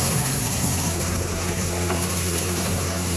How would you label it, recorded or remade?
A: remade